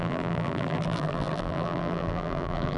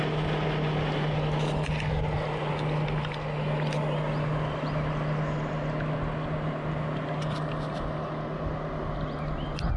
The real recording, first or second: second